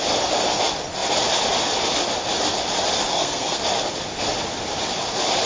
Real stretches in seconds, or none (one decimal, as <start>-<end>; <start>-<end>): 0.0-3.1; 3.6-5.5